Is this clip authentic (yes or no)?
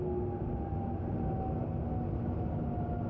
yes